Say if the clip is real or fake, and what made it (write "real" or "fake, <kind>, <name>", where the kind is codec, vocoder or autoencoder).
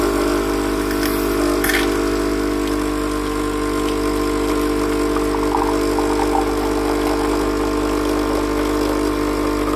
real